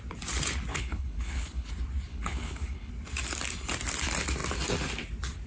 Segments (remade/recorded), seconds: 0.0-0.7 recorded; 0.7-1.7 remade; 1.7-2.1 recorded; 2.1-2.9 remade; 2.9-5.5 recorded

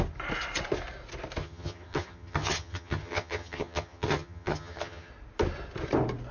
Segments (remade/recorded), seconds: 0.0-1.4 recorded; 1.4-5.1 remade; 5.1-6.3 recorded

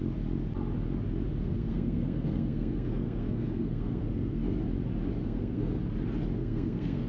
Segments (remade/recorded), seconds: 0.0-1.4 recorded; 1.4-4.6 remade; 4.6-5.2 recorded; 5.2-5.8 remade; 5.8-6.4 recorded; 6.4-7.1 remade

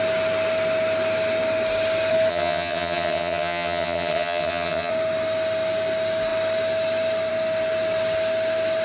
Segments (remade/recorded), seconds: 0.0-2.3 recorded; 2.3-4.9 remade; 4.9-8.8 recorded

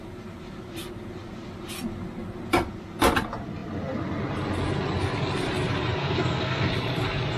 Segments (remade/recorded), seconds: 0.0-6.0 recorded; 6.0-6.7 remade; 6.7-7.4 recorded